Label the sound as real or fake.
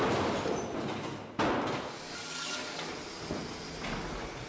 real